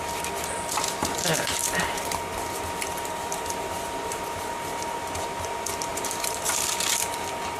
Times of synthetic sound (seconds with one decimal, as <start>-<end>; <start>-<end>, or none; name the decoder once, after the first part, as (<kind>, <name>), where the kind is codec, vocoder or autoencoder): 5.9-6.7 (vocoder, BigVGAN v2)